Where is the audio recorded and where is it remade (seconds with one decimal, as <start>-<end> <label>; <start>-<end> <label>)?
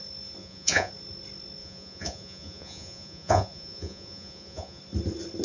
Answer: 0.0-0.4 recorded; 0.4-0.9 remade; 0.9-1.6 recorded; 1.6-4.8 remade; 4.8-5.4 recorded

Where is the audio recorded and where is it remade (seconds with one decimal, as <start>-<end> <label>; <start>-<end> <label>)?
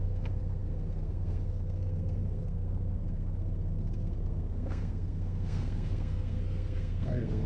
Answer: 0.0-7.5 remade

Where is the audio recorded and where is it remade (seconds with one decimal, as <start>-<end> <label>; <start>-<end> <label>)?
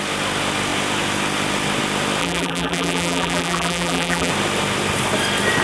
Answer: 0.0-2.2 recorded; 2.2-4.3 remade; 4.3-5.6 recorded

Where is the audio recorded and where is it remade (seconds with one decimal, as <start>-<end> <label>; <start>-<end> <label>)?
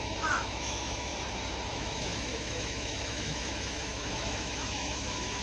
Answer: 0.0-1.1 remade; 1.1-1.7 recorded; 1.7-5.4 remade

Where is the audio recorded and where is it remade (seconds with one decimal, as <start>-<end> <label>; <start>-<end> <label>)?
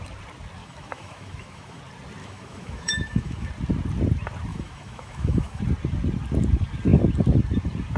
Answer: 0.0-0.6 recorded; 0.6-1.8 remade; 1.8-2.2 recorded; 2.2-3.5 remade; 3.5-4.5 recorded; 4.5-5.6 remade; 5.6-8.0 recorded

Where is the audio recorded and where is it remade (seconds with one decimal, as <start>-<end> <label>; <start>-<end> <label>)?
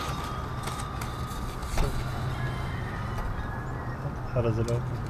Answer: 0.0-5.1 recorded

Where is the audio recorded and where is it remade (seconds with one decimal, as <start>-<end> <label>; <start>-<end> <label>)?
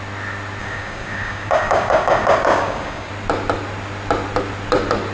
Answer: 0.0-0.6 recorded; 0.6-3.1 remade; 3.1-5.1 recorded